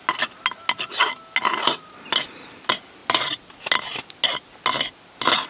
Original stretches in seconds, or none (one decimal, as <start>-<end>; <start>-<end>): 0.0-5.5